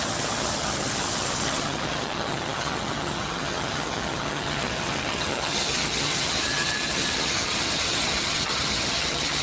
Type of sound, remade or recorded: remade